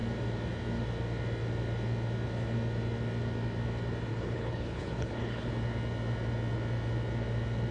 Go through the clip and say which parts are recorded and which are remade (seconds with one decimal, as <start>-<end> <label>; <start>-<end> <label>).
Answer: 0.0-4.1 recorded; 4.1-5.5 remade; 5.5-7.7 recorded

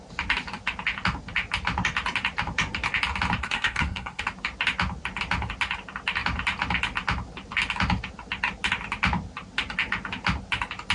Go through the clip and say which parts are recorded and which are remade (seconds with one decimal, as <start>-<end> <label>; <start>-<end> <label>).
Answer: 0.0-3.4 recorded; 3.4-4.2 remade; 4.2-10.9 recorded

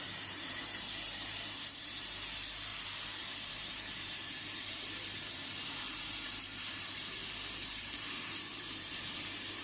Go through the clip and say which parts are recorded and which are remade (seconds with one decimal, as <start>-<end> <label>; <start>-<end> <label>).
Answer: 0.0-2.7 remade; 2.7-3.5 recorded; 3.5-9.6 remade

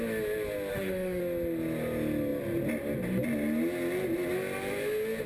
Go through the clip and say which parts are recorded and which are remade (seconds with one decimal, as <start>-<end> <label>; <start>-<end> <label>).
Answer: 0.0-0.7 recorded; 0.7-1.2 remade; 1.2-5.3 recorded